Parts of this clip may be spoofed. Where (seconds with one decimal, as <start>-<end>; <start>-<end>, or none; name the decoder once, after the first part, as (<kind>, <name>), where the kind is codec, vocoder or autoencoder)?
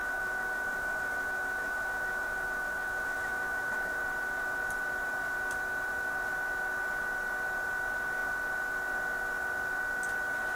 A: 0.0-4.0 (autoencoder, DAC-VAE)